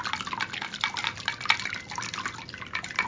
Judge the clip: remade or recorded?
recorded